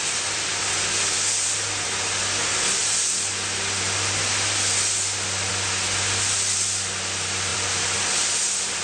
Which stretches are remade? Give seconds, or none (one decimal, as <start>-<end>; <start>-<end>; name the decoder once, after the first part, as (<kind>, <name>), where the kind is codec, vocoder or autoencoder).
0.0-0.5 (vocoder, BigVGAN v2); 7.5-8.3